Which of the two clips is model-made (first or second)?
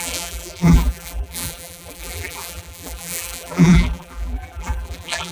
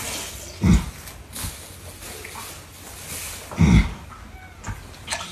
first